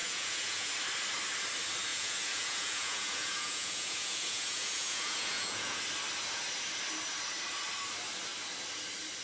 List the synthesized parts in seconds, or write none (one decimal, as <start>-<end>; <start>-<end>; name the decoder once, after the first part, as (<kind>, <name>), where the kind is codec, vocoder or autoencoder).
0.0-0.7 (vocoder, Vocos); 1.9-5.8